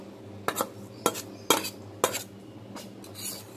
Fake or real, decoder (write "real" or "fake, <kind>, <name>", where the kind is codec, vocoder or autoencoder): real